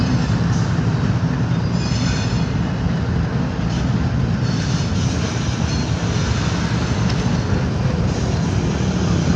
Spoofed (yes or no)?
no